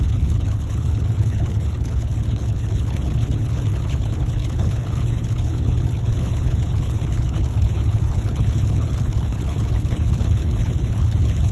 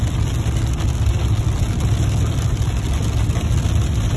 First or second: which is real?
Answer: second